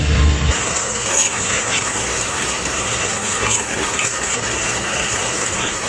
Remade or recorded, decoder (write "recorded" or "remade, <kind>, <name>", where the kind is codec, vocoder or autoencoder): remade, codec, SNAC